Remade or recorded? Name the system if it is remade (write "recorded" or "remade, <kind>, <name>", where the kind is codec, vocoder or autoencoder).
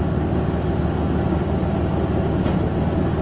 recorded